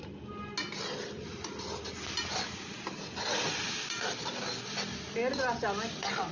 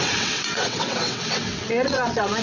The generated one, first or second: second